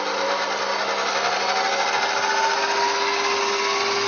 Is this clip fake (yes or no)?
no